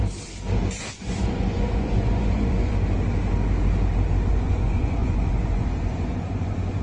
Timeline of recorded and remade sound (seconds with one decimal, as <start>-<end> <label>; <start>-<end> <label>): 0.0-0.9 recorded; 0.9-2.7 remade; 2.7-4.3 recorded; 4.3-6.8 remade